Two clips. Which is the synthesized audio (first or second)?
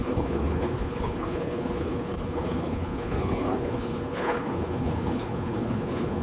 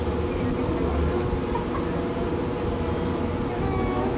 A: first